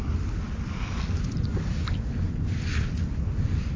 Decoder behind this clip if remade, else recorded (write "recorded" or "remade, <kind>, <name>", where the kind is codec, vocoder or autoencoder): recorded